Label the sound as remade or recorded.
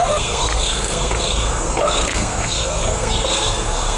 remade